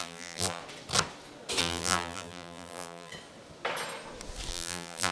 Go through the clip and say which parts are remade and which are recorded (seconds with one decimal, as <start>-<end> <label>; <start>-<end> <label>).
0.0-0.6 remade; 0.6-1.6 recorded; 1.6-3.1 remade; 3.1-4.5 recorded; 4.5-5.1 remade